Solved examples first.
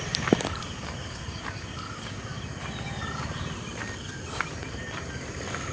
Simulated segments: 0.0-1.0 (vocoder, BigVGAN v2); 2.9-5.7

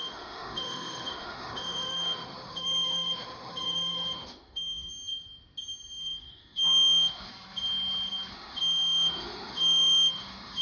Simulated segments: 0.0-4.9 (autoencoder, DAC-VAE); 6.0-7.3; 8.3-10.6

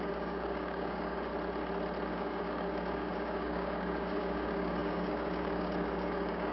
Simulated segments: 0.0-1.3 (codec, DAC); 2.1-6.5

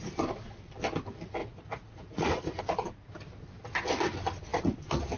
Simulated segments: 1.4-2.6 (vocoder, Vocos)

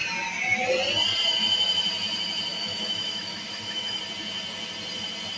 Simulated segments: 2.5-4.0 (autoencoder, DAC-VAE)

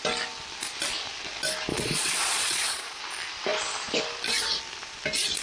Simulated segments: 1.7-3.0 (vocoder, Vocos)

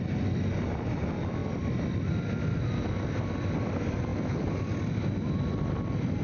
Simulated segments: none